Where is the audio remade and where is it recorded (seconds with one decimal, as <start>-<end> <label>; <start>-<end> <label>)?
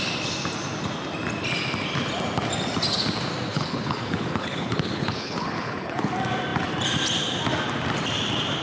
0.0-3.5 recorded; 3.5-6.1 remade; 6.1-8.6 recorded